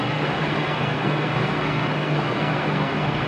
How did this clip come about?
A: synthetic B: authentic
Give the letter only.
A